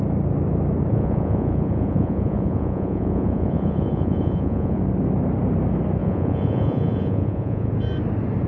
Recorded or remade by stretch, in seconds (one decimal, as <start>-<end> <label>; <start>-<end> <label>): 0.0-0.9 recorded; 0.9-4.8 remade; 4.8-6.0 recorded; 6.0-7.7 remade; 7.7-8.5 recorded